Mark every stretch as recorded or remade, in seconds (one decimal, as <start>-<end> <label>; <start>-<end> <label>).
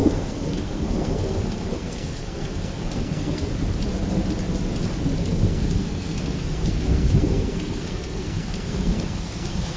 0.0-3.5 remade; 3.5-5.2 recorded; 5.2-9.8 remade